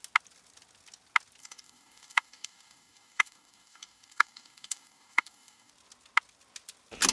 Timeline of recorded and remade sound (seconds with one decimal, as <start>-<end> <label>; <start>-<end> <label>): 0.0-1.4 recorded; 1.4-5.7 remade; 5.7-7.1 recorded